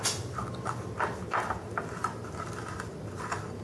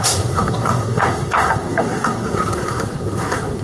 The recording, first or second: first